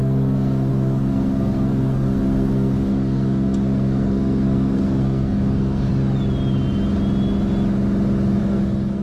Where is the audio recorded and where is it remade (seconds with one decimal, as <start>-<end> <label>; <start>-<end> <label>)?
0.0-5.9 remade; 5.9-8.4 recorded; 8.4-9.0 remade